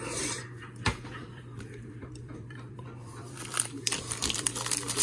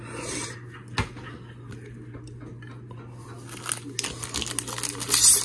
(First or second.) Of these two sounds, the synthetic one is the first